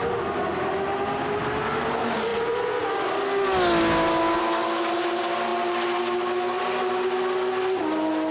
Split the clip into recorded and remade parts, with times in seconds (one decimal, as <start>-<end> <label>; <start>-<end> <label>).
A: 0.0-8.3 recorded